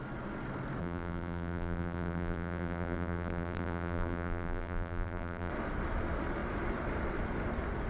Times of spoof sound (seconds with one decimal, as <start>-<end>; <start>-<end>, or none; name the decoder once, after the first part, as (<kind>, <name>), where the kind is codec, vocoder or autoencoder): 0.8-5.5 (vocoder, BigVGAN v2)

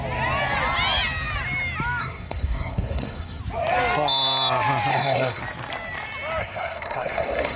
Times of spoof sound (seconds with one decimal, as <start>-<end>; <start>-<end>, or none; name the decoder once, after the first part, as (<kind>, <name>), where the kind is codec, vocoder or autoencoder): 2.0-3.4 (codec, SNAC); 4.9-5.4; 6.4-7.6

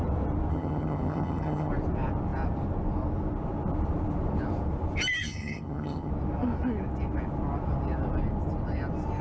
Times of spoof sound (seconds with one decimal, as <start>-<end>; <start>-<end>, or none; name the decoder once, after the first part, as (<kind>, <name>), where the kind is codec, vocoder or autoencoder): 0.5-1.7 (vocoder, HiFi-GAN); 5.2-6.1

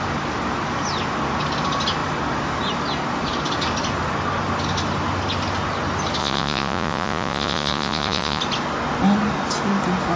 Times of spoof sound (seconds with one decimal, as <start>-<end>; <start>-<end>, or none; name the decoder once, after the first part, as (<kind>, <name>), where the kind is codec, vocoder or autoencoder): 6.2-8.4 (vocoder, Vocos)

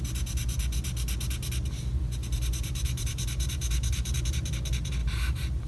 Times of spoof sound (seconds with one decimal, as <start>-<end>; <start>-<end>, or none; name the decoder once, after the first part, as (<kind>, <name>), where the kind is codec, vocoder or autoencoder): 2.2-4.2 (vocoder, BigVGAN v2); 5.0-5.7

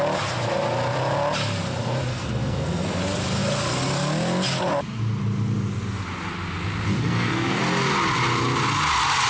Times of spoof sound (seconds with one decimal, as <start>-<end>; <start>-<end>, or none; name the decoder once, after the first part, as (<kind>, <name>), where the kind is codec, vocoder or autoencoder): 2.1-3.0 (codec, SNAC); 6.9-7.6